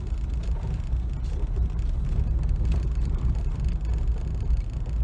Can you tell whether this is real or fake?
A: real